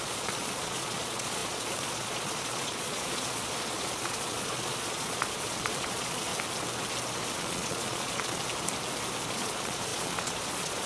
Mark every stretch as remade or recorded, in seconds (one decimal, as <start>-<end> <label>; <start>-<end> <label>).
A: 0.0-6.3 remade; 6.3-7.3 recorded; 7.3-8.4 remade; 8.4-9.3 recorded; 9.3-10.9 remade